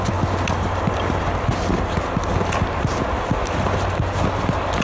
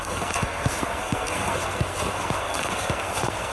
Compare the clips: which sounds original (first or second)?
first